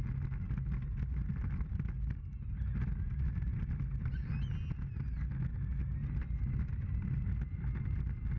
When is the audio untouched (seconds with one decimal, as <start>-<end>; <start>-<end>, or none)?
0.0-8.4